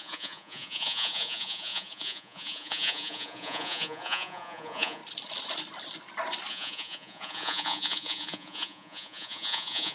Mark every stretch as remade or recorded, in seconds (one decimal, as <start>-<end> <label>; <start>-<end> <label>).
0.0-5.0 remade; 5.0-6.5 recorded; 6.5-9.9 remade